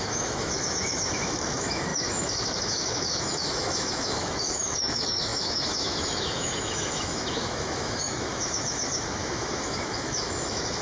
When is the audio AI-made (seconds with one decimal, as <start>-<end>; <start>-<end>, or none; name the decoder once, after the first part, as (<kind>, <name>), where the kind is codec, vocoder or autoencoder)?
0.0-10.8 (autoencoder, DAC-VAE)